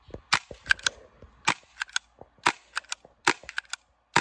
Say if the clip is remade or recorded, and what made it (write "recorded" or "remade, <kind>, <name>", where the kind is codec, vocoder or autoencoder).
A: recorded